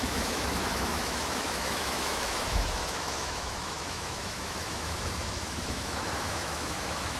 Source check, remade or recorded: remade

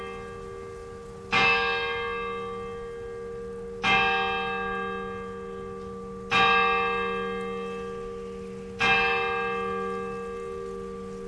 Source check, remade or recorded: recorded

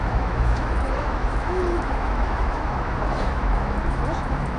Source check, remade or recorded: remade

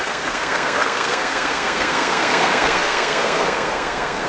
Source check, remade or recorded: remade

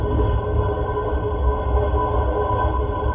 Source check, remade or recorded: recorded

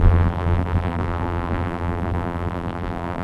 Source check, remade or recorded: remade